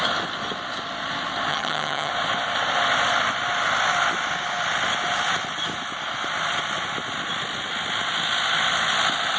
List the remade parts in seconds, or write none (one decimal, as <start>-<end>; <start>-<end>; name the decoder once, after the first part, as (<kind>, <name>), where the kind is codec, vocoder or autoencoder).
1.5-2.1 (vocoder, HiFi-GAN)